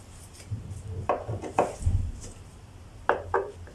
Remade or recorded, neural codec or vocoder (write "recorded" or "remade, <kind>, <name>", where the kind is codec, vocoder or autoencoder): recorded